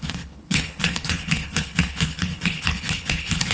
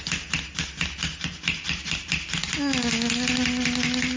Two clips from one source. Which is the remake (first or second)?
first